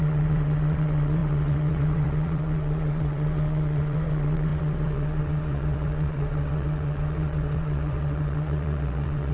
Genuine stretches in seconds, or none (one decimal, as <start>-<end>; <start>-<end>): none